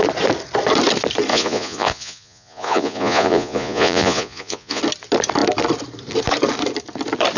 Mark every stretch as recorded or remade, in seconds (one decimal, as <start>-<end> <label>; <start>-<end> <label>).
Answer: 0.0-1.3 recorded; 1.3-4.8 remade; 4.8-7.4 recorded